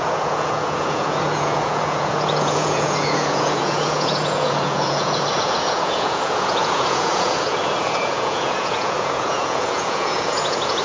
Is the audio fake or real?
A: fake